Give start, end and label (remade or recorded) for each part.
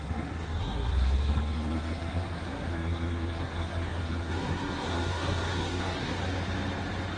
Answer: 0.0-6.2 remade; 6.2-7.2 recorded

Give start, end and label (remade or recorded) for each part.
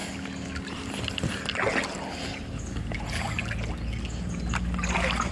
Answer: 0.0-5.3 recorded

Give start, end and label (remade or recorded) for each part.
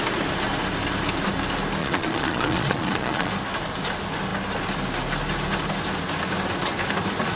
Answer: 0.0-1.8 recorded; 1.8-3.3 remade; 3.3-7.4 recorded